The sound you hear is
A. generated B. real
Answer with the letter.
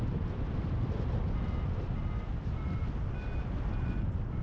B